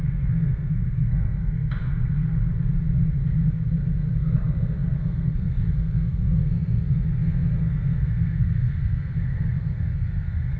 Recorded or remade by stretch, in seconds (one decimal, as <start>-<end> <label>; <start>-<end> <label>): 0.0-2.4 remade; 2.4-3.5 recorded; 3.5-10.6 remade